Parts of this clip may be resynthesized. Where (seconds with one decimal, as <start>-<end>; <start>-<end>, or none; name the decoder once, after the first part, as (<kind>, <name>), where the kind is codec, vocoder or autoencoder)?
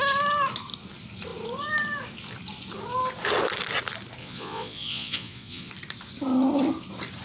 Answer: 4.2-5.7 (vocoder, Vocos)